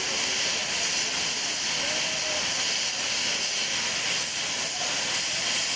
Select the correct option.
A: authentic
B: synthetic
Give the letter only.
A